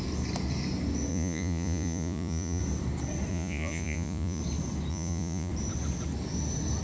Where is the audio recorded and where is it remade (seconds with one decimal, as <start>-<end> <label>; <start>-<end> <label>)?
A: 0.0-1.1 recorded; 1.1-2.6 remade; 2.6-3.3 recorded; 3.3-4.4 remade; 4.4-4.9 recorded; 4.9-5.5 remade; 5.5-6.8 recorded

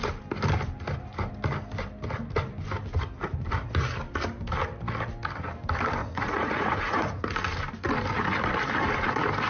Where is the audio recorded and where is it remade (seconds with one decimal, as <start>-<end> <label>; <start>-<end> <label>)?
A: 0.0-6.0 recorded; 6.0-7.2 remade; 7.2-9.5 recorded

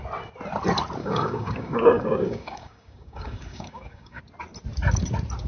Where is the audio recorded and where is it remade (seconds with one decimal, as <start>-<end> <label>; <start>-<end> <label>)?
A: 0.0-1.0 recorded; 1.0-4.2 remade; 4.2-5.5 recorded

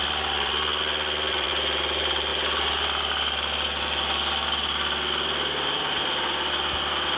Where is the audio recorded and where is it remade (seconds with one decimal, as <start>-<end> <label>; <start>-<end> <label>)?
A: 0.0-1.5 remade; 1.5-7.2 recorded

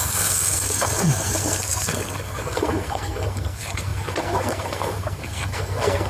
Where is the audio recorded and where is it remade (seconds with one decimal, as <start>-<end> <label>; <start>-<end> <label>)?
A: 0.0-6.1 remade

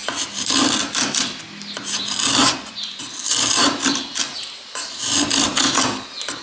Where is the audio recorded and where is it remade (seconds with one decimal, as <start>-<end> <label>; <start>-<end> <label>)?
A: 0.0-2.4 recorded; 2.4-3.0 remade; 3.0-6.4 recorded